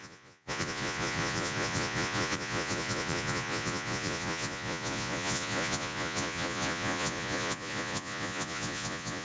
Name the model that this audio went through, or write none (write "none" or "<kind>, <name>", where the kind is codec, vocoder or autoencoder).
vocoder, Vocos